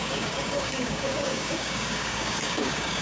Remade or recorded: remade